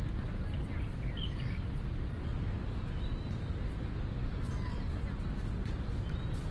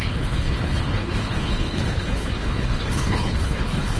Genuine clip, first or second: first